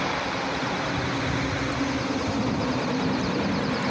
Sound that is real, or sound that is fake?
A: real